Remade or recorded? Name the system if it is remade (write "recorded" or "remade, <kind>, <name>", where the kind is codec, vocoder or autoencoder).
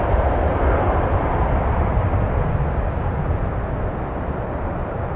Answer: recorded